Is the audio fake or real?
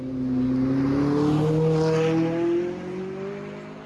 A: real